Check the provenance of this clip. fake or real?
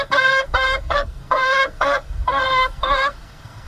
fake